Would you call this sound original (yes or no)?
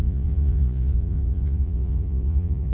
no